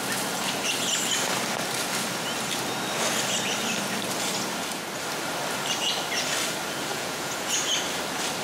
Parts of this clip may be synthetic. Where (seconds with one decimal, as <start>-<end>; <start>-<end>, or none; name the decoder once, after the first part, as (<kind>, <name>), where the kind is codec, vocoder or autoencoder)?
6.9-7.6 (vocoder, Vocos)